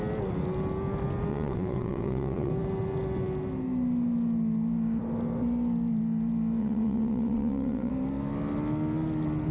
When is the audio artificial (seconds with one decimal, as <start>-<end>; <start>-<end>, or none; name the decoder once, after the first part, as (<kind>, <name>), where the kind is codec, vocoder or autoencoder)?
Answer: 1.3-2.5 (vocoder, WaveNeXt); 6.6-7.9